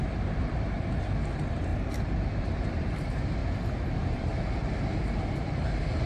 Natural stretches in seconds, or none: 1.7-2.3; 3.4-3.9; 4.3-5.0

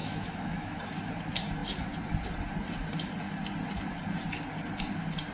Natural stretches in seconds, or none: 0.8-5.3